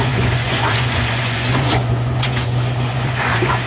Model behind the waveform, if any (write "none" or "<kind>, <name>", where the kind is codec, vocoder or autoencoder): vocoder, Vocos